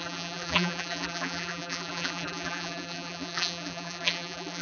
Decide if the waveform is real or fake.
fake